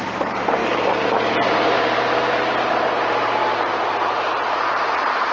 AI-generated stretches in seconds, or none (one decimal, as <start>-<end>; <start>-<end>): 0.0-0.6; 2.7-5.3